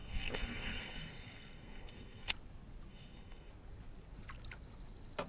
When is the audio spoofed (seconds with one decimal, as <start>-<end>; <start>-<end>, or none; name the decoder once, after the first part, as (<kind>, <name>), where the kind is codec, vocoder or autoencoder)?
0.0-2.3 (codec, SNAC); 2.9-3.5